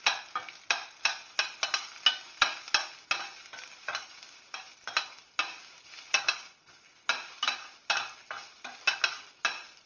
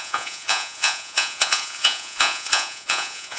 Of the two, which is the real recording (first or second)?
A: first